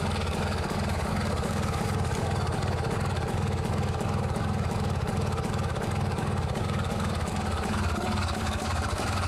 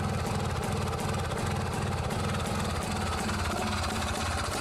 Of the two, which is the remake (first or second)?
first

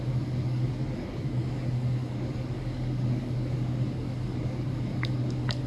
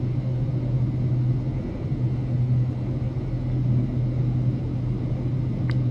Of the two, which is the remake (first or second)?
first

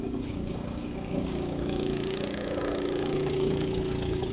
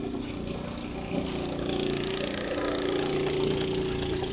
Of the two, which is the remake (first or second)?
first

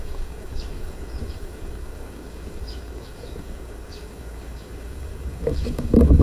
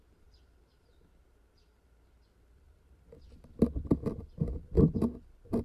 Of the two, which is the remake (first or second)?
first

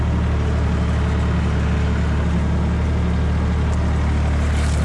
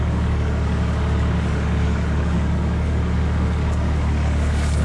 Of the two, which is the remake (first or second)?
second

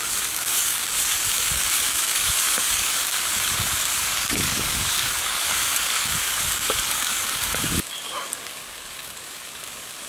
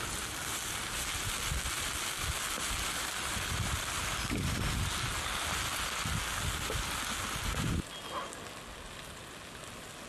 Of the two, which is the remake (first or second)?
first